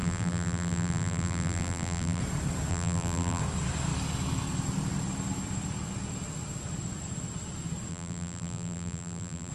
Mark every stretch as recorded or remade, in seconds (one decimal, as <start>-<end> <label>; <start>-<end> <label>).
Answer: 0.0-2.2 remade; 2.2-2.7 recorded; 2.7-3.4 remade; 3.4-7.9 recorded; 7.9-9.5 remade

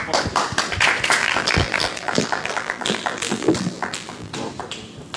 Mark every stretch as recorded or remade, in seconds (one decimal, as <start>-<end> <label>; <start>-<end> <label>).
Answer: 0.0-1.2 recorded; 1.2-4.3 remade; 4.3-5.2 recorded